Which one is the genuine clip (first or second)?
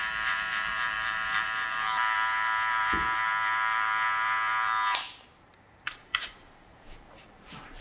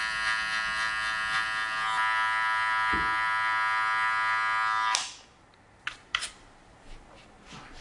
second